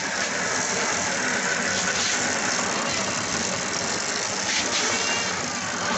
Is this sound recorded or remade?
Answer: recorded